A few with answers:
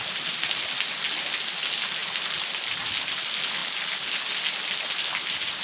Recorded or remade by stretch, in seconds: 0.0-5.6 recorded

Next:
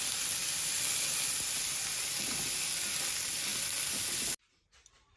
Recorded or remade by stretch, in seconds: 0.0-5.2 recorded